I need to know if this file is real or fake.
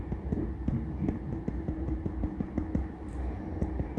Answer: real